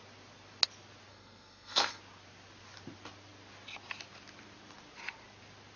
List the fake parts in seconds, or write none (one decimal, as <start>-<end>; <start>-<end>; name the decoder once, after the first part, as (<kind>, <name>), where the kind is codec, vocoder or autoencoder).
1.1-2.0 (codec, SNAC)